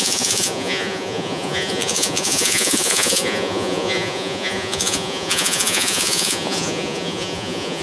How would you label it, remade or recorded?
remade